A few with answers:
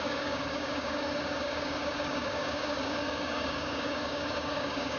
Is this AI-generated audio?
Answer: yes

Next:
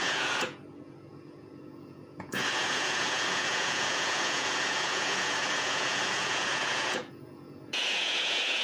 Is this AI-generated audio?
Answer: yes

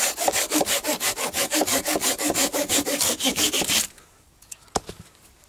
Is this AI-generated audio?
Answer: yes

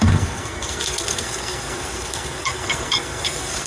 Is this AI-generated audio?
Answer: yes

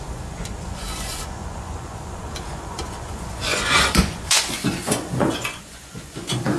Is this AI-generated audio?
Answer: yes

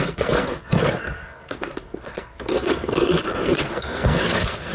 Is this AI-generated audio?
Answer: yes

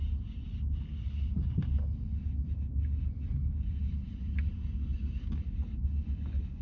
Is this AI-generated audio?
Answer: no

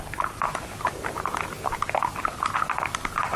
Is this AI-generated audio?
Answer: no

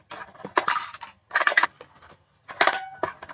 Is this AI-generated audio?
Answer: no